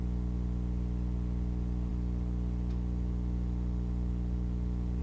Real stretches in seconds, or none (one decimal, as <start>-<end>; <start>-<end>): 0.0-5.0